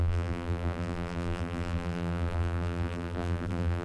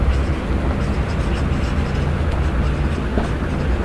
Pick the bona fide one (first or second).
second